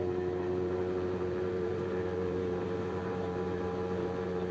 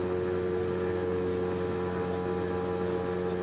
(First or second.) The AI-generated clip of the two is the first